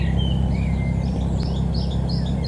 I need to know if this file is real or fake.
real